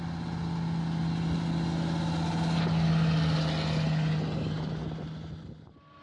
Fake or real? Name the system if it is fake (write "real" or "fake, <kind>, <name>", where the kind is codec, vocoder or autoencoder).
real